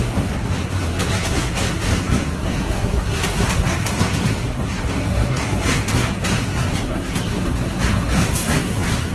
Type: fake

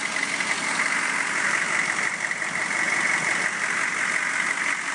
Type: real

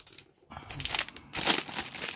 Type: real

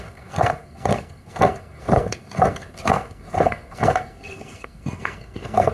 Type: fake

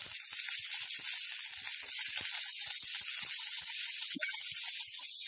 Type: real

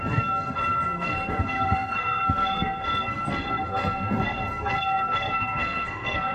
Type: fake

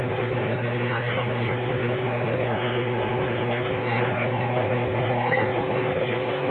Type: fake